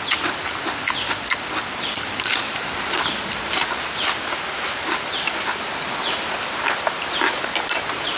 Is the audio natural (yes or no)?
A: yes